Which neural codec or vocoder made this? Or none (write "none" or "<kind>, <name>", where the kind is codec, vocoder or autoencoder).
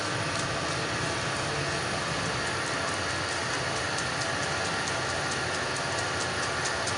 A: none